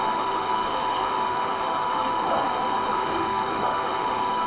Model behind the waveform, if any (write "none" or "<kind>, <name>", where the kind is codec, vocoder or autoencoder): autoencoder, DAC-VAE